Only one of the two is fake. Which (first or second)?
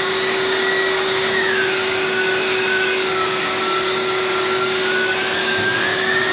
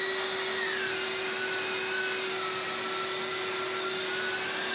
first